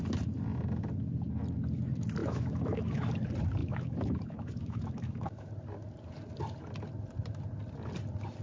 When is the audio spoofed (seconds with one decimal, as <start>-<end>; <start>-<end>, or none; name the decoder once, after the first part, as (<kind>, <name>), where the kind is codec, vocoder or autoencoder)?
2.2-3.1 (autoencoder, DAC-VAE); 3.6-5.5